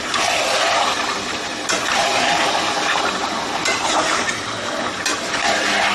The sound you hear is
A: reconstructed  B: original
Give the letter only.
B